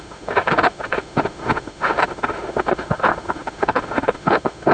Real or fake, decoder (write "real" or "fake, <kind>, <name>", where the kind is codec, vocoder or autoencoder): fake, autoencoder, DAC-VAE